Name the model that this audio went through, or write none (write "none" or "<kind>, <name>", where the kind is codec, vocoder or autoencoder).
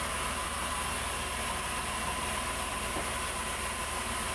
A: none